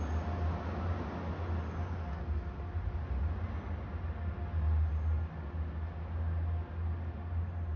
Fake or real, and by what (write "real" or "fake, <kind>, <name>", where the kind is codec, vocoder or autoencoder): real